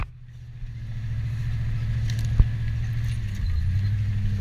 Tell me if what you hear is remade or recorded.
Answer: recorded